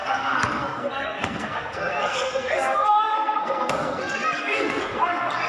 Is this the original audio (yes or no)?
no